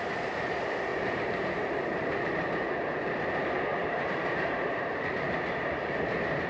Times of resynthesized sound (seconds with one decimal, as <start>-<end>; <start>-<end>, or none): 0.0-6.5